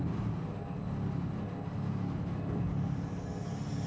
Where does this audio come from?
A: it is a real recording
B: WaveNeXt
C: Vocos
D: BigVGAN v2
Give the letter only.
A